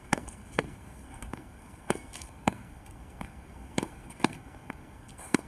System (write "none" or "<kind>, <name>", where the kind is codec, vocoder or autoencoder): codec, SNAC